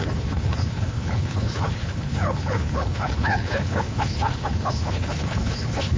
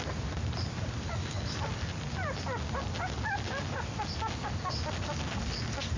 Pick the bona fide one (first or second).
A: second